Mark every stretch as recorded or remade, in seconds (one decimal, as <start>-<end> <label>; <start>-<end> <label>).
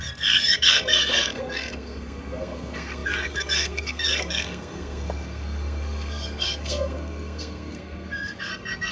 0.0-8.9 remade